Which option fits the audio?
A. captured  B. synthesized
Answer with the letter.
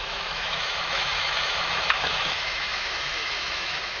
B